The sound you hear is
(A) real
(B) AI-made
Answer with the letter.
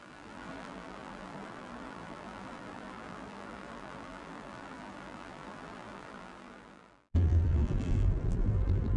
B